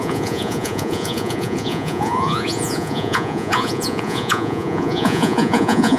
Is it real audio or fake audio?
fake